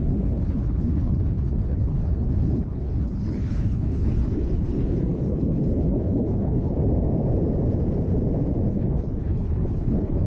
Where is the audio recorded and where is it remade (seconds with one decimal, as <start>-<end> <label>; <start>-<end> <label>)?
0.0-6.8 remade; 6.8-8.7 recorded; 8.7-10.3 remade